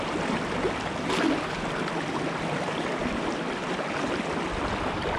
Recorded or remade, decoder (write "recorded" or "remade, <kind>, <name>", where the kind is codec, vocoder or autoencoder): recorded